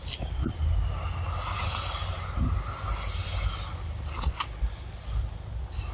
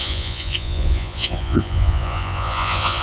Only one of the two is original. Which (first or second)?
first